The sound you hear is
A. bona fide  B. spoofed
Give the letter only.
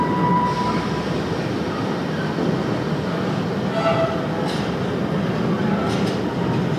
A